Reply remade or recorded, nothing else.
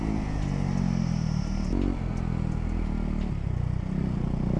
recorded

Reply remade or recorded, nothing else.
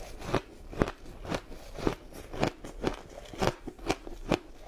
recorded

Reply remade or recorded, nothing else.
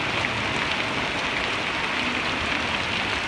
recorded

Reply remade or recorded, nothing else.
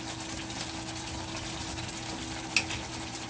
recorded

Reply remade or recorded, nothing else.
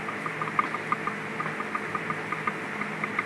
recorded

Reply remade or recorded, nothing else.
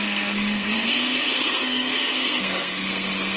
remade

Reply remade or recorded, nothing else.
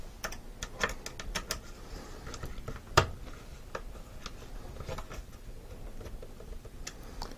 recorded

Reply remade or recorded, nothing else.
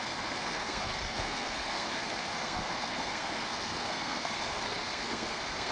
remade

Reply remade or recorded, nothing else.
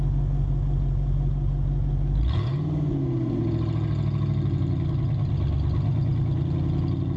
recorded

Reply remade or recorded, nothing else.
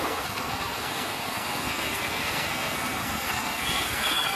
remade